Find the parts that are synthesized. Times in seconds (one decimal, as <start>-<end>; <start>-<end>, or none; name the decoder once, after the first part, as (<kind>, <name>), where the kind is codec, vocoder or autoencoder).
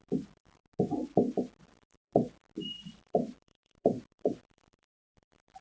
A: 0.0-0.6 (vocoder, BigVGAN v2); 1.6-2.4; 2.9-5.6